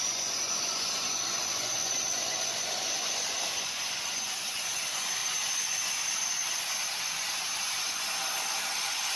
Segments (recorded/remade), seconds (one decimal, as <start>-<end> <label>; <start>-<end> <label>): 0.0-9.2 remade